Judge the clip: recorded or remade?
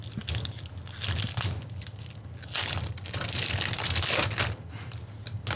recorded